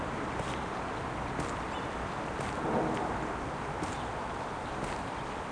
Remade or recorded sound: recorded